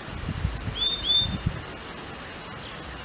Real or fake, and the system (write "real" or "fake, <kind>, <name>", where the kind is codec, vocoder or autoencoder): real